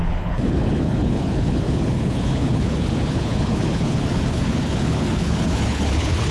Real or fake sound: fake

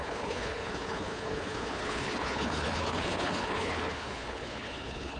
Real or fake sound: fake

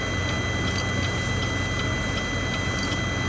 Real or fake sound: real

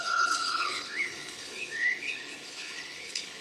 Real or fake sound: fake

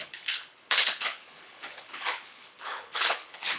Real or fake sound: fake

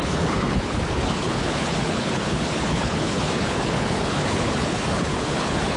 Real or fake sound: fake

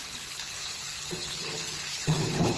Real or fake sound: fake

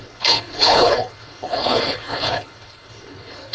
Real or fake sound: fake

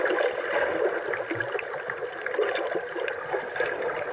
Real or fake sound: real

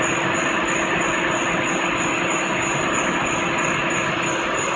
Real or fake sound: real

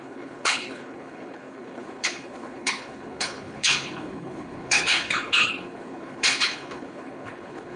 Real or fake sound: fake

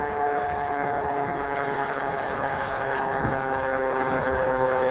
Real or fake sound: fake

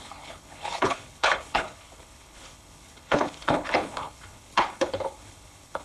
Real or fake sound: fake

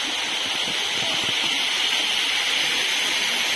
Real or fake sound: real